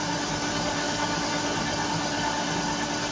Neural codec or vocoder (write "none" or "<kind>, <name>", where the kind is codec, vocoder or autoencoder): none